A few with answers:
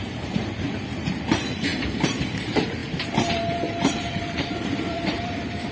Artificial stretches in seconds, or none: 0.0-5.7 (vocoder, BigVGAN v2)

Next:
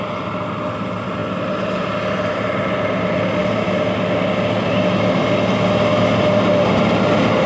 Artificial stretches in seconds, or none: 6.5-7.5 (vocoder, BigVGAN v2)

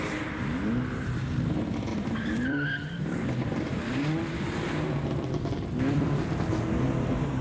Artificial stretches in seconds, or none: 1.9-6.3 (vocoder, BigVGAN v2)